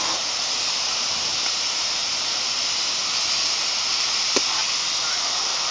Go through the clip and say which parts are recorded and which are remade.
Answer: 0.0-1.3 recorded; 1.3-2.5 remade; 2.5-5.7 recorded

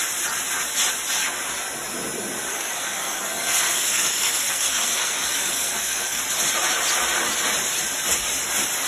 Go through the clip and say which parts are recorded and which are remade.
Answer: 0.0-2.5 recorded; 2.5-6.2 remade; 6.2-8.9 recorded

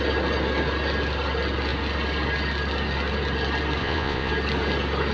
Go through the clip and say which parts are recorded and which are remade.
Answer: 0.0-3.8 recorded; 3.8-4.3 remade; 4.3-5.1 recorded

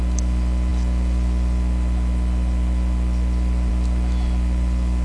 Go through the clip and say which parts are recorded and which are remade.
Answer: 0.0-5.0 recorded

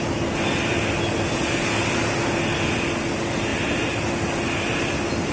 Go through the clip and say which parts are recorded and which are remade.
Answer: 0.0-5.3 recorded

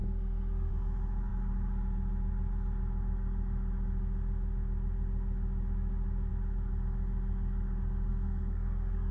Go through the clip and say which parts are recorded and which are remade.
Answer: 0.0-0.7 remade; 0.7-8.1 recorded; 8.1-9.1 remade

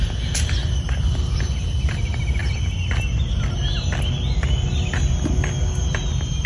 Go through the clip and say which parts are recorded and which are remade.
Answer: 0.0-6.5 recorded